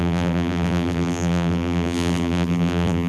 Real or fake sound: fake